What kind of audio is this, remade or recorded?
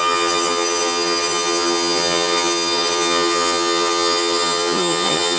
remade